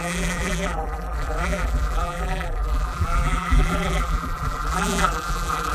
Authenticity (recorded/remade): remade